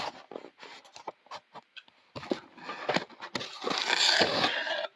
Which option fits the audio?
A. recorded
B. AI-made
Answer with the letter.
A